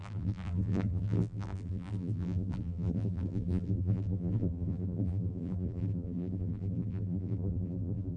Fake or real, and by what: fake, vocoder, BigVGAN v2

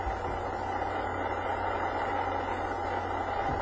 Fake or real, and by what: real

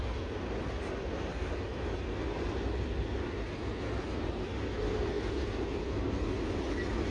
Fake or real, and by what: real